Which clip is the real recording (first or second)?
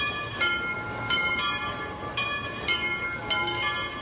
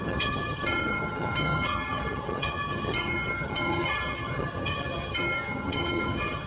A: first